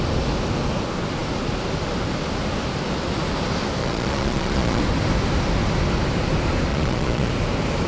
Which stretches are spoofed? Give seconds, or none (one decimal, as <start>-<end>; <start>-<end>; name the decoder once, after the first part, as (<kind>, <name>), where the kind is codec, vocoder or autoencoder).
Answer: 3.8-4.8 (vocoder, Vocos); 6.7-7.3